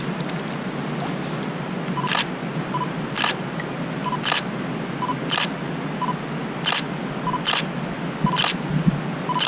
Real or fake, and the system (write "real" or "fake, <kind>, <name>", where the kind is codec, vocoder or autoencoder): real